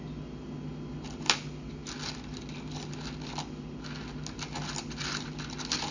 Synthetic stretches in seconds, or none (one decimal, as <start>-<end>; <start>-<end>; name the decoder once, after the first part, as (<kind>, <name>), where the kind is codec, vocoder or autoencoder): none